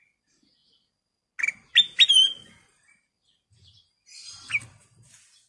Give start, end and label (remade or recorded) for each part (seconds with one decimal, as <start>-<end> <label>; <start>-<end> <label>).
0.0-5.5 recorded